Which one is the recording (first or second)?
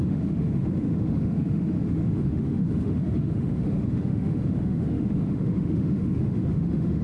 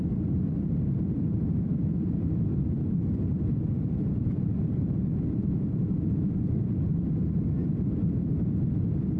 second